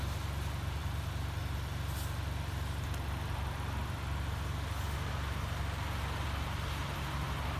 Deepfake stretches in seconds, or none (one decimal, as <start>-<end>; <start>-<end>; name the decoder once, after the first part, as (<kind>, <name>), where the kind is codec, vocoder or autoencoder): none